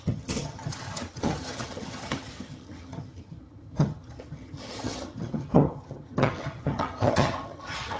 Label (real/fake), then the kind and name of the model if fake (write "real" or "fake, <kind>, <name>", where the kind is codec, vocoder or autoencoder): fake, vocoder, HiFi-GAN